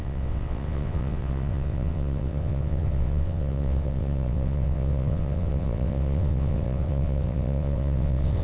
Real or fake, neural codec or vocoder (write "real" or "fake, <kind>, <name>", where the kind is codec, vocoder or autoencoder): fake, vocoder, WaveNeXt